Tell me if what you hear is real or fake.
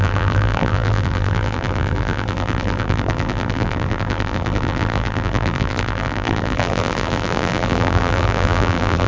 fake